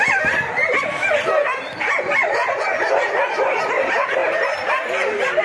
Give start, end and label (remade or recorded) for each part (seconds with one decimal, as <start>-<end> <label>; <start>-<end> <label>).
0.0-5.4 recorded